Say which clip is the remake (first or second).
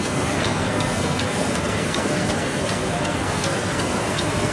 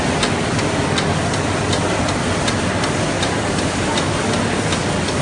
first